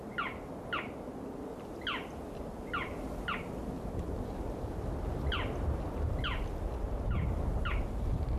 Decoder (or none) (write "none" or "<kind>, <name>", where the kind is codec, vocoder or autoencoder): none